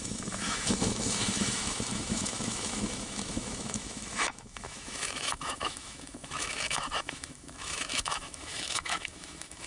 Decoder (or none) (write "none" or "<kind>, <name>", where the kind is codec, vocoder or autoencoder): autoencoder, DAC-VAE